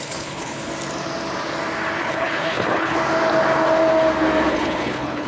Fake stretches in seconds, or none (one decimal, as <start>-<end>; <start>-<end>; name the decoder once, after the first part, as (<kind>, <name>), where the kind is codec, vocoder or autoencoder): 0.0-0.7 (codec, HILCodec); 2.0-3.0; 4.5-5.3

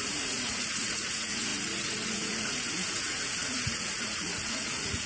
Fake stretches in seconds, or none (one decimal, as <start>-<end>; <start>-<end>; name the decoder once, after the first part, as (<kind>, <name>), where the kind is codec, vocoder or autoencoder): 0.0-5.1 (vocoder, Vocos)

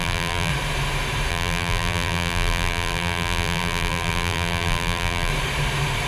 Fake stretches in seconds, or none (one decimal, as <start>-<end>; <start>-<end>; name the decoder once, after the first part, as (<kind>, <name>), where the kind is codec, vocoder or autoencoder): 0.0-0.5 (vocoder, BigVGAN v2); 1.3-5.3

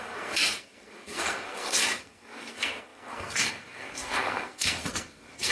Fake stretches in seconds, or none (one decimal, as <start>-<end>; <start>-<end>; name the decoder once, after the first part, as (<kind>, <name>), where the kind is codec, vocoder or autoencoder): 0.0-5.5 (codec, SNAC)

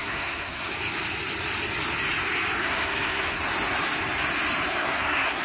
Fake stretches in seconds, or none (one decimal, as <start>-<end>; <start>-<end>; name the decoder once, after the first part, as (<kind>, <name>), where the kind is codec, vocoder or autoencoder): 0.0-0.7 (codec, SNAC); 2.6-3.4; 4.8-5.4

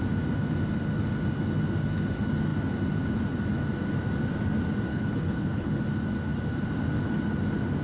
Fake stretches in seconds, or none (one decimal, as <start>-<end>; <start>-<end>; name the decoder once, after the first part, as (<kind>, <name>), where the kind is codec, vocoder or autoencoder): 4.9-5.8 (codec, HILCodec)